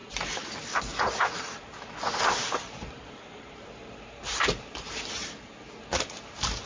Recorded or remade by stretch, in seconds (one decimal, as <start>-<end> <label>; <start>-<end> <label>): 0.0-0.5 remade; 0.5-0.9 recorded; 0.9-1.9 remade; 1.9-2.4 recorded; 2.4-5.7 remade; 5.7-6.7 recorded